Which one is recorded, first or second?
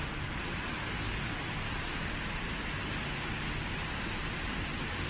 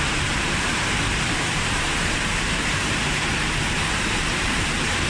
first